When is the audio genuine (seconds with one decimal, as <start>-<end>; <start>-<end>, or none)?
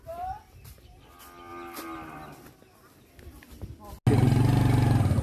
0.0-5.2